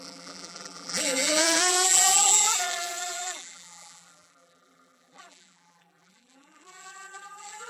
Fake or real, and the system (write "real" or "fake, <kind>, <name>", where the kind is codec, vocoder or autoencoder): fake, vocoder, BigVGAN v2